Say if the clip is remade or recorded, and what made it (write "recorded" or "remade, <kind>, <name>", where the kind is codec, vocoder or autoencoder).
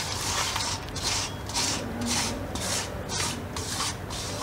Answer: recorded